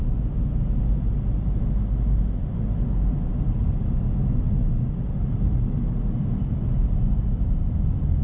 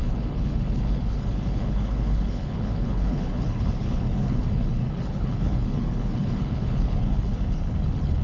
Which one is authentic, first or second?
first